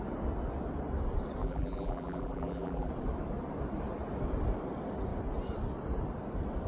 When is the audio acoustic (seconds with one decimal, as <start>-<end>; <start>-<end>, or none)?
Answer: 0.0-1.4; 2.9-6.7